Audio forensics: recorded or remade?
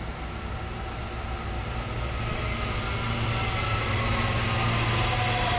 recorded